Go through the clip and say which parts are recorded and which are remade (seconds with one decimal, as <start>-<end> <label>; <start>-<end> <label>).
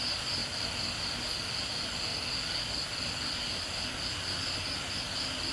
0.0-5.5 recorded